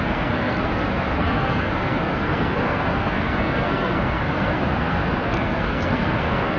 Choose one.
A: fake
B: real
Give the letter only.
A